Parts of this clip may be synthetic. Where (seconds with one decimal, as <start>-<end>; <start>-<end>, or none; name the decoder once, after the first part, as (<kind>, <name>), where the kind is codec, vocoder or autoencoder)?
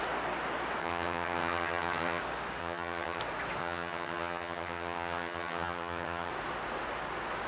0.8-2.2 (vocoder, HiFi-GAN); 2.6-3.2; 3.6-6.3